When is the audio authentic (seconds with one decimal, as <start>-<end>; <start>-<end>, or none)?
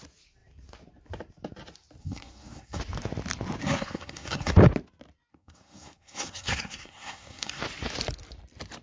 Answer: 0.0-2.0; 2.8-3.6; 4.5-5.3; 7.6-8.8